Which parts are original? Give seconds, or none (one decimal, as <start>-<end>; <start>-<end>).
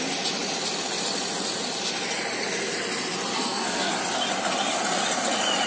0.0-3.3; 3.9-5.7